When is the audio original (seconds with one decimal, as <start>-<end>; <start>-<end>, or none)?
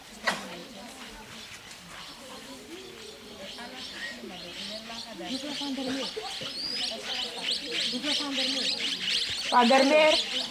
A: 0.0-0.6; 1.1-8.7; 9.2-10.5